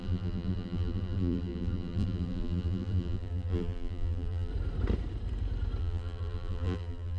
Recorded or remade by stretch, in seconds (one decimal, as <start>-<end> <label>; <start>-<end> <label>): 0.0-4.5 remade; 4.5-5.8 recorded; 5.8-7.2 remade